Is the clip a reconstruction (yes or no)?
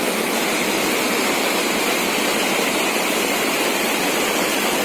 yes